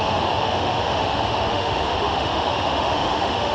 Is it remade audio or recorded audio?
remade